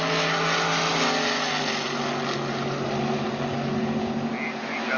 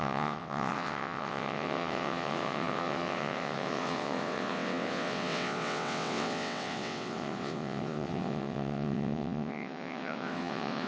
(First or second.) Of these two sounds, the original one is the first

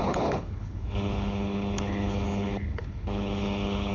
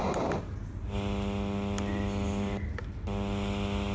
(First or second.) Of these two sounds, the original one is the second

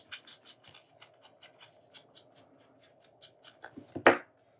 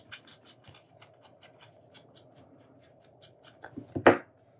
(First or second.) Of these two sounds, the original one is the first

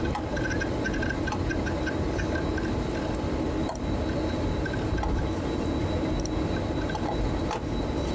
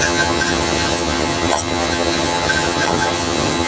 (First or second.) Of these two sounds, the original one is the first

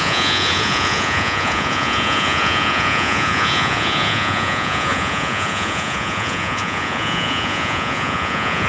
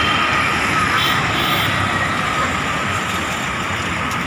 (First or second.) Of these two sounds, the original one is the second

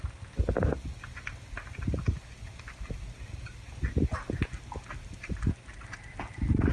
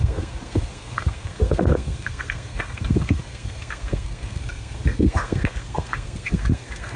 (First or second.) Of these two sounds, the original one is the first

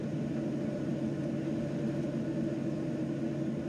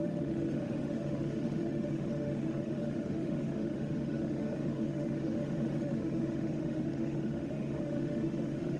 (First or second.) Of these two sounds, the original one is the first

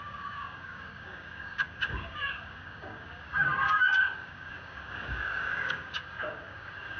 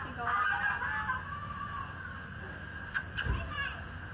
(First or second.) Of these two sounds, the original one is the second